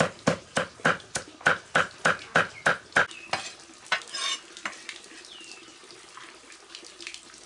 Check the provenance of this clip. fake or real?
real